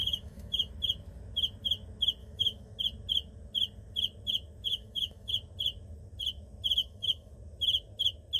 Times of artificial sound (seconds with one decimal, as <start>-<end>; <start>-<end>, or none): 0.0-0.7; 2.2-2.8; 4.7-5.3; 6.8-7.3